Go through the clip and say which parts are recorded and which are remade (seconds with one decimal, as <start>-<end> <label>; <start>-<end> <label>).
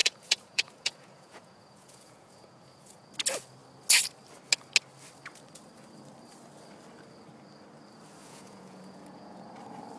0.0-3.1 remade; 3.1-8.2 recorded; 8.2-9.4 remade; 9.4-10.0 recorded